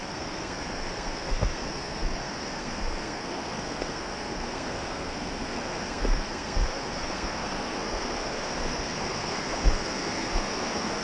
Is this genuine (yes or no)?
no